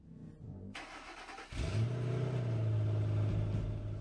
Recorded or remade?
recorded